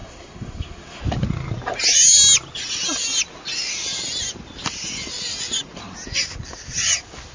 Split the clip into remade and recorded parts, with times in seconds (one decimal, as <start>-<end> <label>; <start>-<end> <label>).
0.0-1.0 remade; 1.0-7.3 recorded